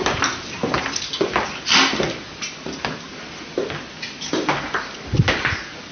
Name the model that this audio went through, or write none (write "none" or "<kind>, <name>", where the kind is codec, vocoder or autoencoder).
none